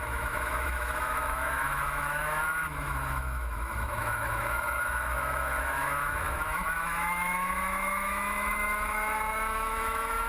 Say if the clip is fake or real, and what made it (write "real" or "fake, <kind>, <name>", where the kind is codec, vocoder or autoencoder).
fake, autoencoder, DAC-VAE